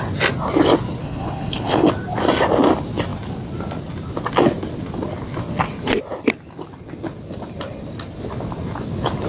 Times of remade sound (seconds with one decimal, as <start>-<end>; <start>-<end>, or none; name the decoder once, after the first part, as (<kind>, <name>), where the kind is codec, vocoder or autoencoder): 1.0-1.9 (codec, HILCodec)